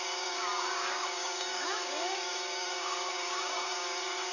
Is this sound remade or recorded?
remade